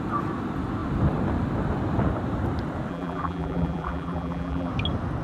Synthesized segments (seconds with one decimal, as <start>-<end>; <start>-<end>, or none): 2.9-4.7